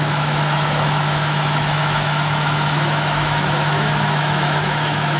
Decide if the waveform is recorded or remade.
remade